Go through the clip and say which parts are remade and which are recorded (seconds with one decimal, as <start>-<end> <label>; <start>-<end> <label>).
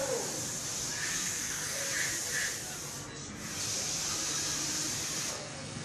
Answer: 0.0-1.1 recorded; 1.1-1.8 remade; 1.8-5.3 recorded; 5.3-5.8 remade